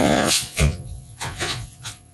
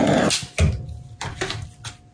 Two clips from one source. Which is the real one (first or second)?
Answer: second